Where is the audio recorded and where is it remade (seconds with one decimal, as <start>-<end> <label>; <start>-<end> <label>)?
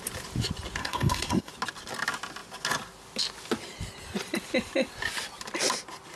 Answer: 0.0-0.8 recorded; 0.8-1.5 remade; 1.5-6.2 recorded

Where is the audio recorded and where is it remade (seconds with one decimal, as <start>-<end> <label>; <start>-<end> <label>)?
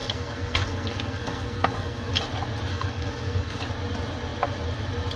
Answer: 0.0-2.1 remade; 2.1-2.7 recorded; 2.7-3.6 remade; 3.6-5.2 recorded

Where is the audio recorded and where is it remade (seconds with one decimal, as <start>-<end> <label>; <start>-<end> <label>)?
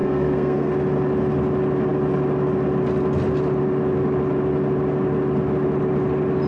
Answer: 0.0-0.7 remade; 0.7-6.5 recorded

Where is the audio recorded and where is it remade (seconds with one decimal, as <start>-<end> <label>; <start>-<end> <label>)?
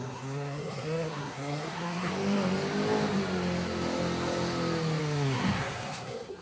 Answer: 0.0-2.1 remade; 2.1-5.0 recorded; 5.0-6.4 remade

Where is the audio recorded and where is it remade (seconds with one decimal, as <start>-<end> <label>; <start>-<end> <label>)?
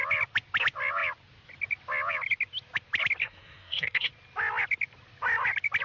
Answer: 0.0-3.2 recorded; 3.2-4.1 remade; 4.1-5.8 recorded